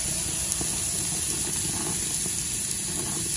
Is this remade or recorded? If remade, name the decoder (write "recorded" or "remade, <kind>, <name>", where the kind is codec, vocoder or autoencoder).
recorded